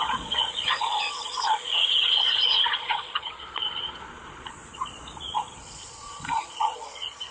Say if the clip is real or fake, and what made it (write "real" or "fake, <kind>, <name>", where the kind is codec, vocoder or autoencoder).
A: fake, vocoder, Vocos